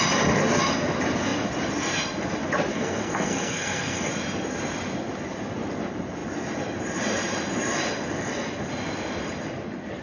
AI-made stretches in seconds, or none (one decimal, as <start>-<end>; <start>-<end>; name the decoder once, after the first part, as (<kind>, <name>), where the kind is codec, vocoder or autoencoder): 2.7-4.1 (codec, SNAC)